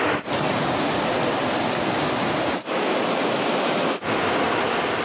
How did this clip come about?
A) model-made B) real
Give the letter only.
B